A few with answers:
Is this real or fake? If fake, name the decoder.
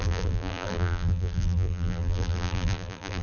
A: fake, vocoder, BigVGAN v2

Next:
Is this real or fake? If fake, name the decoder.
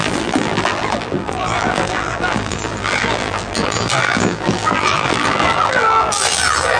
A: fake, vocoder, BigVGAN v2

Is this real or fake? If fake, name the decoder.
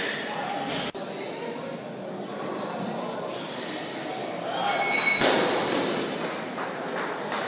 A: real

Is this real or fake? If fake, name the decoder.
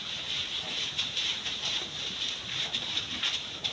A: fake, vocoder, BigVGAN v2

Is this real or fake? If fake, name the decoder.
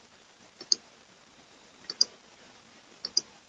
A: fake, vocoder, BigVGAN v2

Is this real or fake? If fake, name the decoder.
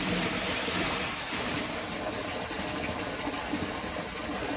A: real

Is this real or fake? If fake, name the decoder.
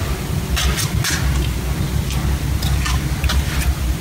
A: real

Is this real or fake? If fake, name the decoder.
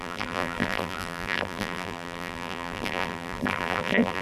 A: fake, vocoder, BigVGAN v2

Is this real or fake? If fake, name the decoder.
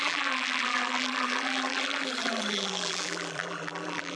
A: fake, vocoder, BigVGAN v2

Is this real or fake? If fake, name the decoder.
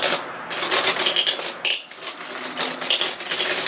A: real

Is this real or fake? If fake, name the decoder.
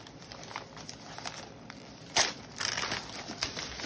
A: fake, vocoder, BigVGAN v2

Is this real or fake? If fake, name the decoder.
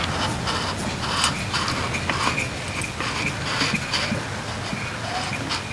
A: real